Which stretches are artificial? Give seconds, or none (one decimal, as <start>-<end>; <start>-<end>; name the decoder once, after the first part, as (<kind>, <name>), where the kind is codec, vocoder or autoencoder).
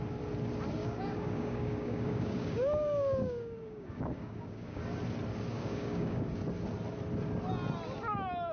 0.8-4.8 (codec, DAC); 5.5-6.4